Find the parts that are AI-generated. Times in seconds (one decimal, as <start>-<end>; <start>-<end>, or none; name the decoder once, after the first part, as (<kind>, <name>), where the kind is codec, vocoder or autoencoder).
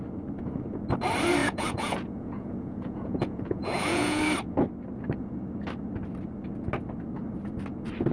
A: 1.4-4.2 (vocoder, Vocos)